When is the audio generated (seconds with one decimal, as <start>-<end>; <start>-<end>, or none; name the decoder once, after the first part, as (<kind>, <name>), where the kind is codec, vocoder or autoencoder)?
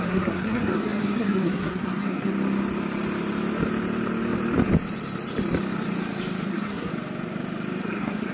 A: 0.0-2.3 (codec, SNAC); 6.5-6.9; 7.8-8.3